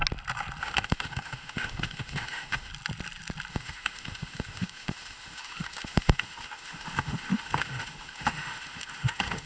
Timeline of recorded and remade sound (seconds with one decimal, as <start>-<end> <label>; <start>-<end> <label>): 0.0-0.6 recorded; 0.6-2.7 remade; 2.7-3.5 recorded; 3.5-9.5 remade